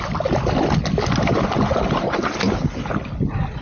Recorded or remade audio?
recorded